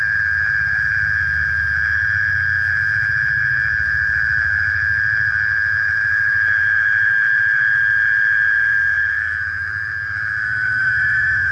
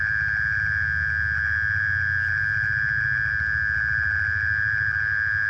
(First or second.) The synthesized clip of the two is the first